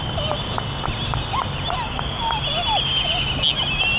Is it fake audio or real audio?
real